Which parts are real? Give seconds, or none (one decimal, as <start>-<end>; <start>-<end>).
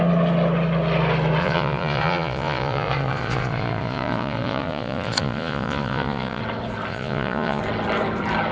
0.0-1.4; 6.4-6.9; 7.6-8.5